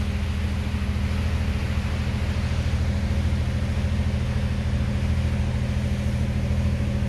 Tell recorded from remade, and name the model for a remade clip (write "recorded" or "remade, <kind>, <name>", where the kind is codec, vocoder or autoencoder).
recorded